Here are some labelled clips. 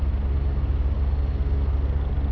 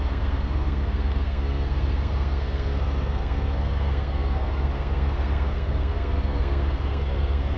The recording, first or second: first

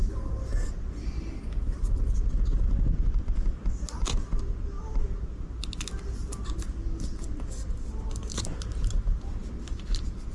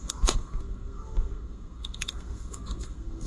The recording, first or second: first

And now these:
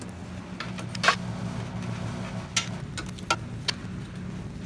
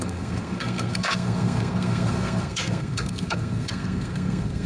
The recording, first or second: first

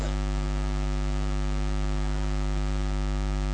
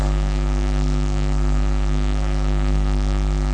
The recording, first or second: first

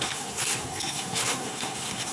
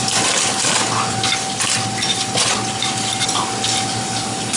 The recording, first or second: second